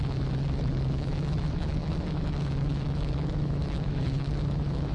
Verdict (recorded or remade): remade